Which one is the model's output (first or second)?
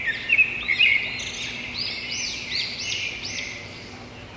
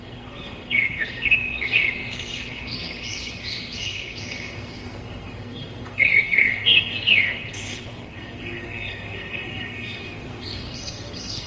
second